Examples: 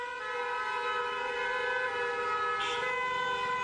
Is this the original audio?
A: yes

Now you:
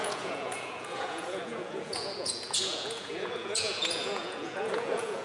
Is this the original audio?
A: no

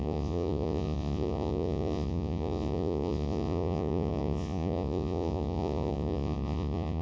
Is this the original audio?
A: no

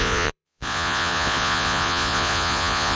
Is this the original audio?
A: no